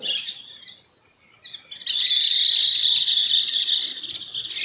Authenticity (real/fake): real